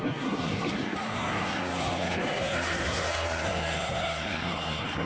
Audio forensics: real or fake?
fake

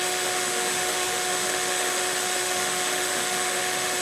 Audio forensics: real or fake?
fake